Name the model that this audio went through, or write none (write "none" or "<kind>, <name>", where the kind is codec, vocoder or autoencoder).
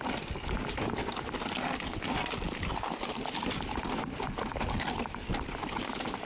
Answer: none